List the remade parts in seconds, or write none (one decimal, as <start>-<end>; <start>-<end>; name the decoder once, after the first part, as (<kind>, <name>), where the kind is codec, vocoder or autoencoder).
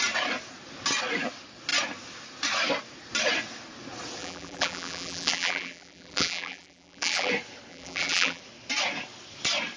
4.2-7.3 (vocoder, BigVGAN v2); 7.7-8.4